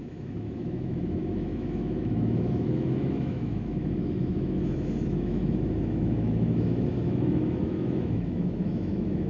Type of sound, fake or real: fake